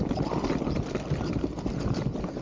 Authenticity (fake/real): real